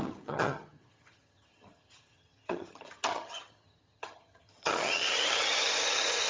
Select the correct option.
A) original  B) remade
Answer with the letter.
B